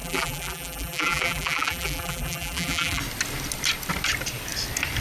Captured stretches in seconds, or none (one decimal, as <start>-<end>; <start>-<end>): 3.0-5.0